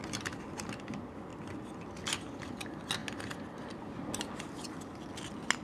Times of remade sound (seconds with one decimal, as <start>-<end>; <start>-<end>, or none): none